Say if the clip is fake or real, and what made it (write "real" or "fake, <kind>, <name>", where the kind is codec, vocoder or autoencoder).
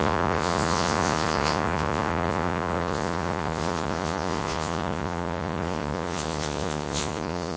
fake, vocoder, Vocos